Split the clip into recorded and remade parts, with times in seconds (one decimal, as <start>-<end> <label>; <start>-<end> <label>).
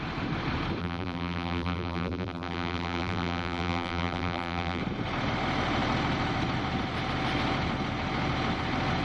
0.0-0.8 recorded; 0.8-4.8 remade; 4.8-9.0 recorded